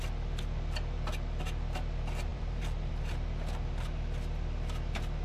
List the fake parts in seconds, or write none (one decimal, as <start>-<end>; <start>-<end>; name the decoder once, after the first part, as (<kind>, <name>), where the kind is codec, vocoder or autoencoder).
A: 2.3-2.9 (vocoder, BigVGAN v2)